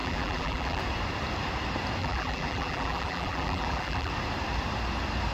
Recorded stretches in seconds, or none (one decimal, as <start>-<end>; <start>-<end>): 0.8-2.0; 4.1-5.3